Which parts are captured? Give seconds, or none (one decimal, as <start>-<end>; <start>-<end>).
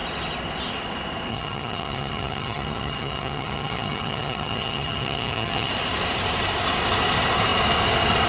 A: 0.0-1.3; 5.7-8.3